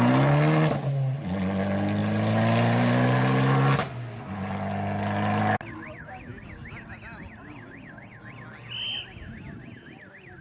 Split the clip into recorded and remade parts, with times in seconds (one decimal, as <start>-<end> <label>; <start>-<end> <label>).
0.0-10.4 recorded